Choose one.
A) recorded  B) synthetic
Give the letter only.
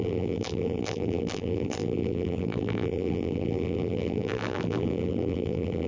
B